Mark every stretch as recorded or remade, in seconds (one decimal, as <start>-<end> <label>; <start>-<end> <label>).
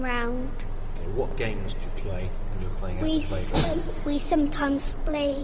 0.0-4.6 recorded; 4.6-5.4 remade